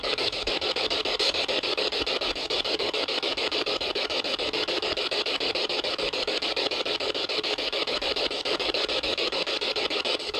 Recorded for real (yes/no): no